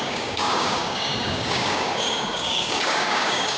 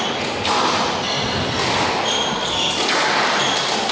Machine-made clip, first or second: first